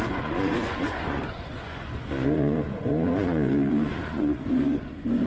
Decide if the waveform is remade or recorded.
remade